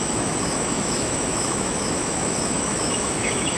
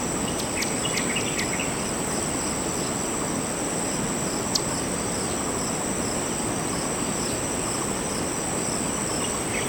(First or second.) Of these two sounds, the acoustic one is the second